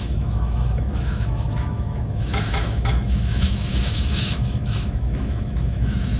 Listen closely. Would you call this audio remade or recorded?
remade